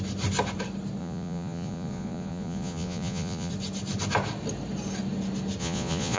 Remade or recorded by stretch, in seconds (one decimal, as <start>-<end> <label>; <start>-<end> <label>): 0.0-1.0 recorded; 1.0-3.5 remade; 3.5-5.6 recorded; 5.6-6.2 remade